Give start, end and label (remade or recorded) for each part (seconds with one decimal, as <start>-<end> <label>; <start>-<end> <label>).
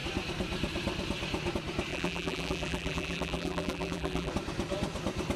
0.0-1.9 recorded; 1.9-4.3 remade; 4.3-5.4 recorded